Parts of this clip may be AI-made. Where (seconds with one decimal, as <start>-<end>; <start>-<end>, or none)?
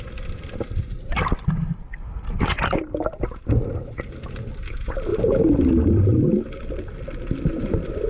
1.9-4.1; 5.1-6.8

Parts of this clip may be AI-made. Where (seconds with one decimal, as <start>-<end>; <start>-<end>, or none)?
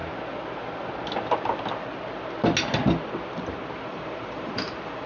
3.9-5.1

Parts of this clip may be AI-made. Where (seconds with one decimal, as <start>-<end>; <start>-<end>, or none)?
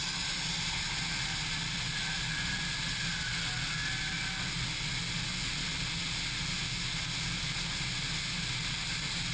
none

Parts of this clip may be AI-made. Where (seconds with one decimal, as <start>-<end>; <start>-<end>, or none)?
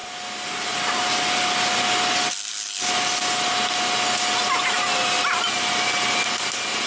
none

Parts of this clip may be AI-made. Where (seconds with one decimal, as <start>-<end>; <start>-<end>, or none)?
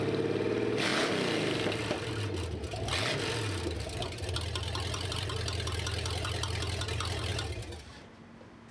none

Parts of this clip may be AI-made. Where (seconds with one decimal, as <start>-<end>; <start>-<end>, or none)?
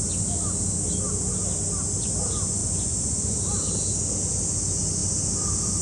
2.6-3.4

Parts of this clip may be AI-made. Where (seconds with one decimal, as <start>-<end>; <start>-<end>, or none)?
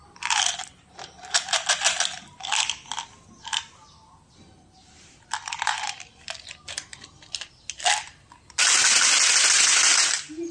0.0-6.9; 9.5-10.5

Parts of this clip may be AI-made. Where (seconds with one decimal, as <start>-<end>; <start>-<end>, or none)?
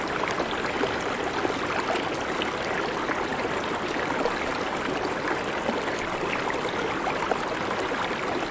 none